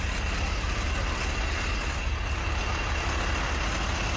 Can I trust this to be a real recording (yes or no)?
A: yes